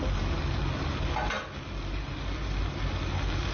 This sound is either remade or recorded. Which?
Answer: recorded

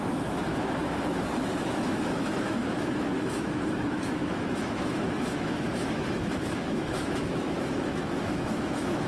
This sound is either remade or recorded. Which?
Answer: remade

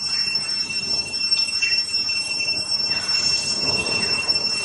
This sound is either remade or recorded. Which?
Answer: remade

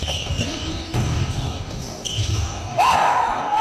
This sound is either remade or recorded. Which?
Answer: remade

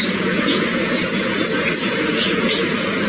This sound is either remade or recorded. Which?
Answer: remade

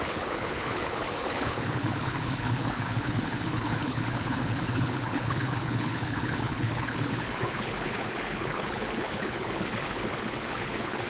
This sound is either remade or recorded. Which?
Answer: remade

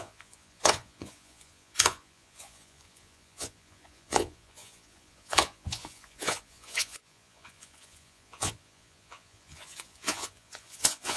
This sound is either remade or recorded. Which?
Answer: remade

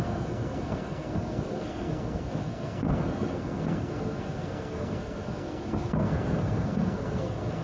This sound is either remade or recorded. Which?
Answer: remade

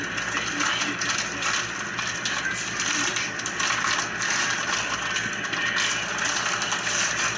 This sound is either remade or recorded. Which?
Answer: recorded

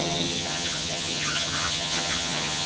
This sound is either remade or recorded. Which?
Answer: remade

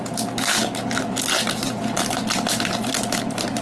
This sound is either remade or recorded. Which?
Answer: recorded